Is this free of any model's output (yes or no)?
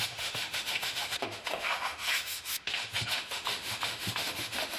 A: no